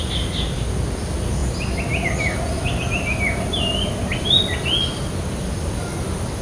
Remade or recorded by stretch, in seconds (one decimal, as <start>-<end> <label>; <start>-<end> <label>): 0.0-6.4 recorded